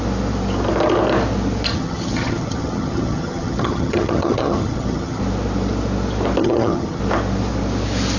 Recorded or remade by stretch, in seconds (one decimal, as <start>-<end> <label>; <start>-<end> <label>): 0.0-1.7 recorded; 1.7-5.2 remade; 5.2-6.4 recorded; 6.4-7.0 remade; 7.0-8.2 recorded